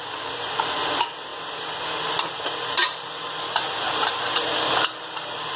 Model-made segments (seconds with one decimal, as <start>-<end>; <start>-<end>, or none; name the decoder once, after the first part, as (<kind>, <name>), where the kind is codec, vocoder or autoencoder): none